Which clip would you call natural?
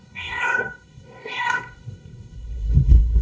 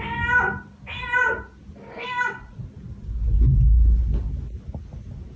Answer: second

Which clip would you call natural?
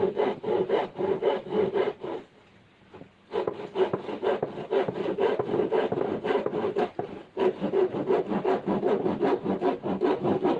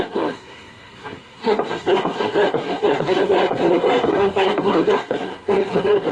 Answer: first